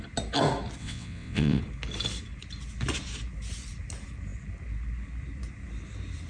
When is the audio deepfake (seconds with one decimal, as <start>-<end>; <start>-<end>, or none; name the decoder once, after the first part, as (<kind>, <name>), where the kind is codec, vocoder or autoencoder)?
0.8-1.6 (vocoder, WaveNeXt)